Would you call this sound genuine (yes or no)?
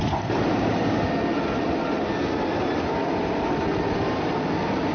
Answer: yes